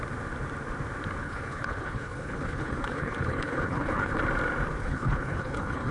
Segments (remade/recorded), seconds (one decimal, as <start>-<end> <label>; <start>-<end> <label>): 0.0-1.2 recorded; 1.2-4.2 remade; 4.2-4.8 recorded; 4.8-5.9 remade